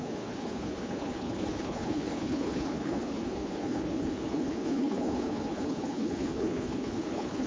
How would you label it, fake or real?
fake